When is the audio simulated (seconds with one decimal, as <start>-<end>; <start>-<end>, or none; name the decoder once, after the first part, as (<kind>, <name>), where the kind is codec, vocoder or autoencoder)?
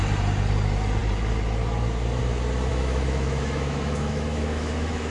2.7-5.1 (autoencoder, DAC-VAE)